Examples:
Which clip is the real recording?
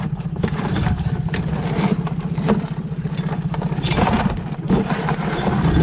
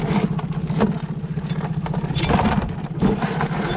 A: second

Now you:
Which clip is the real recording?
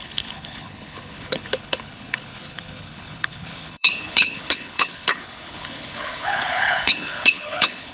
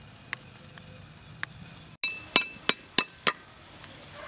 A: second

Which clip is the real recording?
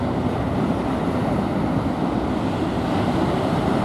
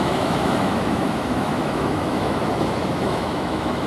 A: first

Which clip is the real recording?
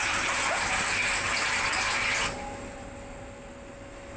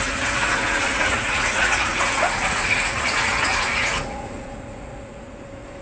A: first